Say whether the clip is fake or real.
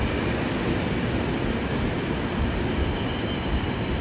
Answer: real